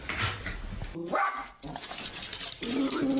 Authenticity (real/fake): real